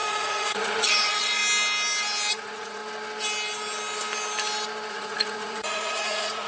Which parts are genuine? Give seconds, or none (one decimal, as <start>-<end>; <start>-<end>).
1.4-2.3; 2.8-4.9